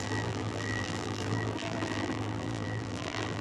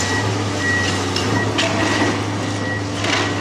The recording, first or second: second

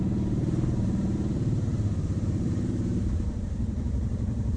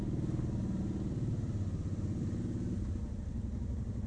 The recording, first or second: second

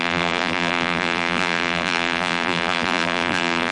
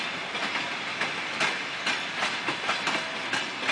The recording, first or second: second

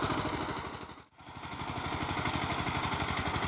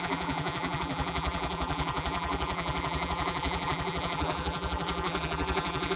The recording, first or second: first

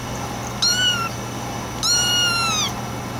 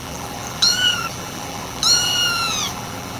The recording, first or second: first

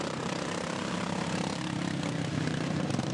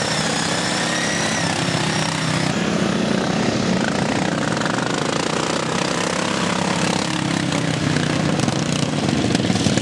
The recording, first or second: second